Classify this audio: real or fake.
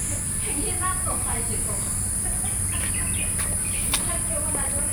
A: real